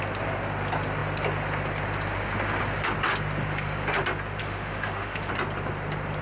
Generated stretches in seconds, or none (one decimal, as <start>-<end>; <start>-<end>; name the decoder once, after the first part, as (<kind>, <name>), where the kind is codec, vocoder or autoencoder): 4.4-5.3 (autoencoder, DAC-VAE)